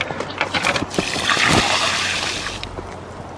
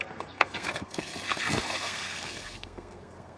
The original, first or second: first